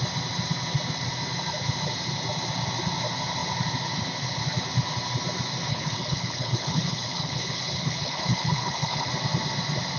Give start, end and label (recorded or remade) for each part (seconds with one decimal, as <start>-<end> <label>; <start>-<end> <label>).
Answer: 0.0-5.7 recorded; 5.7-9.1 remade; 9.1-10.0 recorded